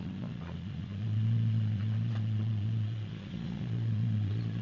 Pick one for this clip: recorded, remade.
remade